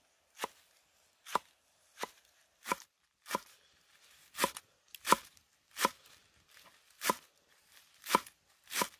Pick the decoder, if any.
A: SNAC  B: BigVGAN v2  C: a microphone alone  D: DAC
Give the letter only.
C